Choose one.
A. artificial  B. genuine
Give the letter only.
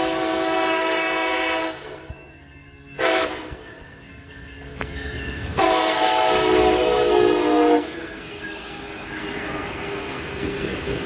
A